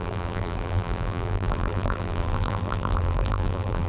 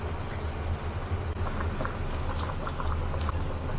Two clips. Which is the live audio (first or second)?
second